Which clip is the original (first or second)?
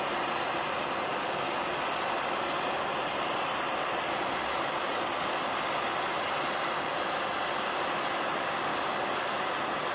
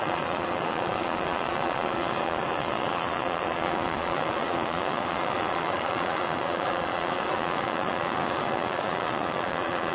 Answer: first